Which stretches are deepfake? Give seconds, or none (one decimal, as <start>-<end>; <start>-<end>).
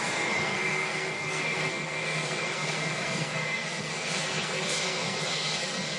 0.0-6.0